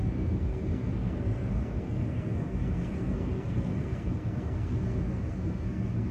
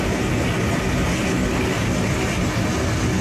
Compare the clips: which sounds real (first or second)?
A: second